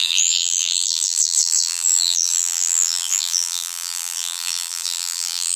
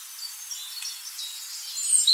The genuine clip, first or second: second